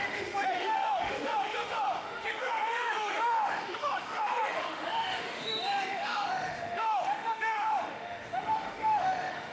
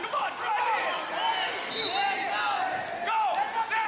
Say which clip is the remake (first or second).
first